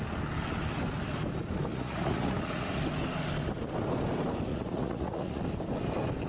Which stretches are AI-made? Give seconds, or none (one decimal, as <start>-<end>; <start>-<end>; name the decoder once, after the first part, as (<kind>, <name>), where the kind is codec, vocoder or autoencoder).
1.7-2.8 (vocoder, Vocos); 4.5-5.4